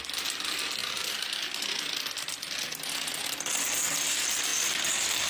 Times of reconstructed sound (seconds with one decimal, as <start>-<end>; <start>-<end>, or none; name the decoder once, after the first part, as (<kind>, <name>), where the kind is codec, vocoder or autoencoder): 0.8-1.5 (vocoder, BigVGAN v2)